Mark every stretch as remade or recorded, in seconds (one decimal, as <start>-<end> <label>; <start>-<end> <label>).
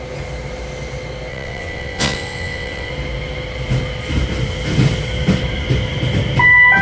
0.0-1.3 recorded; 1.3-2.9 remade; 2.9-6.8 recorded